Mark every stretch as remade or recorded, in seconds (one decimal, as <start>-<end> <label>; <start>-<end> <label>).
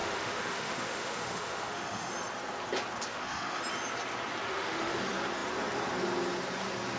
0.0-2.1 remade; 2.1-3.1 recorded; 3.1-3.6 remade; 3.6-4.5 recorded; 4.5-5.0 remade; 5.0-7.0 recorded